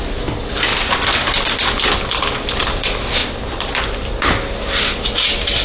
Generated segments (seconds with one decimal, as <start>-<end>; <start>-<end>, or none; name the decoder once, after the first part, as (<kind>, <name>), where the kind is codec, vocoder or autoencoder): none